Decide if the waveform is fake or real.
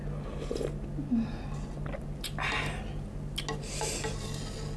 real